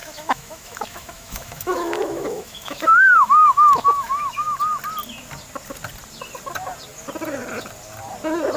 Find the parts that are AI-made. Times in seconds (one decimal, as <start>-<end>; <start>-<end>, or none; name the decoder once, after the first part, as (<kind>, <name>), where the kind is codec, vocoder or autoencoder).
0.0-4.6 (autoencoder, DAC-VAE)